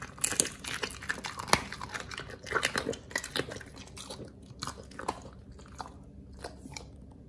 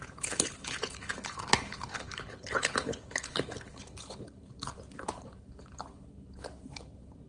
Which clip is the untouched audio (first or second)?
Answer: first